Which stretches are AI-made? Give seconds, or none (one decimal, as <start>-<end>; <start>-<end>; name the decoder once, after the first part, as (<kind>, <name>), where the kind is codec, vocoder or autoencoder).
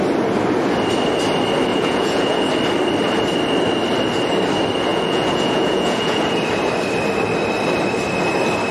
1.7-2.5 (vocoder, Vocos); 4.9-6.4